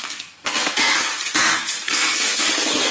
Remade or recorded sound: remade